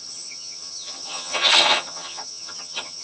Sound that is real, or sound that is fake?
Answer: fake